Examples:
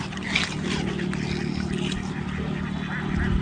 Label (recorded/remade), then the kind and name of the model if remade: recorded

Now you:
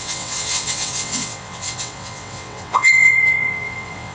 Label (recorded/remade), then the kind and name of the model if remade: remade, vocoder, WaveNeXt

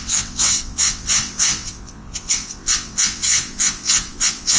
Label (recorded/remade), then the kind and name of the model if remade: remade, vocoder, WaveNeXt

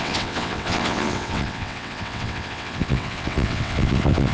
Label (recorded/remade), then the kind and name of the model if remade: remade, vocoder, WaveNeXt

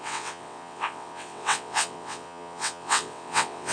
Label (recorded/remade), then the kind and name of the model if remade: remade, vocoder, WaveNeXt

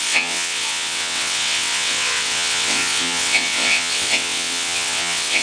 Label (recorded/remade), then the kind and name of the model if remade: remade, vocoder, WaveNeXt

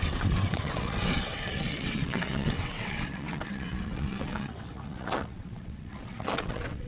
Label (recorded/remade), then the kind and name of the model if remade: remade, vocoder, WaveNeXt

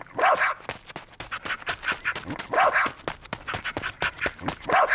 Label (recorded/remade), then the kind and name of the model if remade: recorded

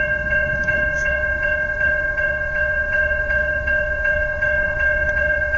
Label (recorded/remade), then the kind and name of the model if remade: remade, vocoder, WaveNeXt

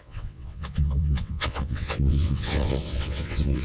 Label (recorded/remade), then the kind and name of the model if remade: remade, vocoder, WaveNeXt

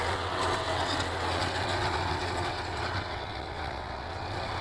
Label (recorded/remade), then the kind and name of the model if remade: remade, vocoder, WaveNeXt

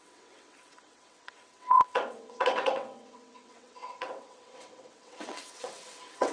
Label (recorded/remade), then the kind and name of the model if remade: remade, vocoder, WaveNeXt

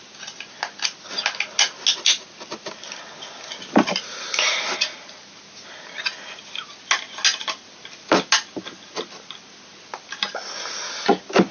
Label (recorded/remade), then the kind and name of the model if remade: recorded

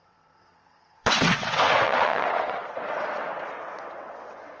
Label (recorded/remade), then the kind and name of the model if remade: remade, vocoder, WaveNeXt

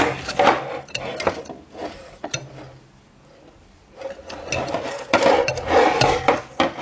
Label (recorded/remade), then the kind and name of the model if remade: recorded